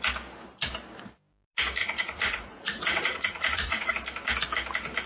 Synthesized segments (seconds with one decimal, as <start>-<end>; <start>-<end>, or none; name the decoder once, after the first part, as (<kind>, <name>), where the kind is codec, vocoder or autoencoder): 1.8-3.9 (vocoder, Vocos)